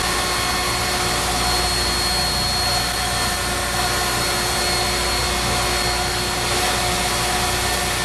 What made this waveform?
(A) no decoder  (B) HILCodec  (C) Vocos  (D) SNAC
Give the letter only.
A